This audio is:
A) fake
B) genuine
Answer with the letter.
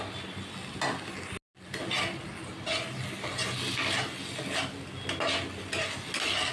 B